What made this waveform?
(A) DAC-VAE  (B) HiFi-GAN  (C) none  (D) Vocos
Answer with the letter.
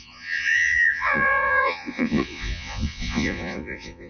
D